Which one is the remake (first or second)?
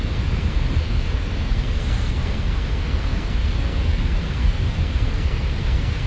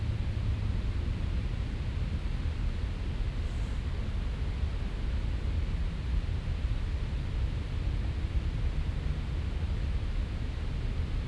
first